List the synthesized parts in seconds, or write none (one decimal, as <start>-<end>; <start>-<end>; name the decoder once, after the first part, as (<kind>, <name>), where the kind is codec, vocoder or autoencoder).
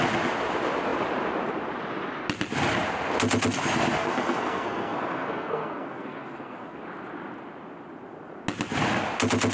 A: 4.0-6.8 (codec, SNAC)